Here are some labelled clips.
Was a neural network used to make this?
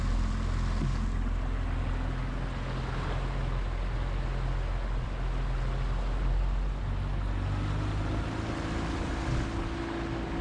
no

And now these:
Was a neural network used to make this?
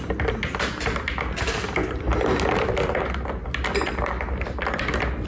no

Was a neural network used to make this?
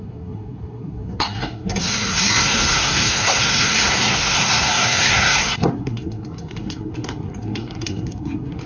yes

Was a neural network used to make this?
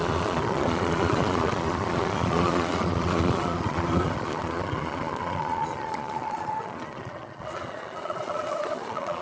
yes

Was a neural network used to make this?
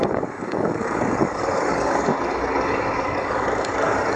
yes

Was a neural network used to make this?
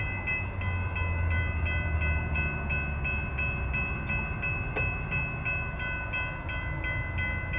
no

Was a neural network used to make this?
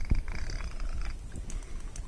no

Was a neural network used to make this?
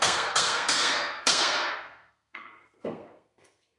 yes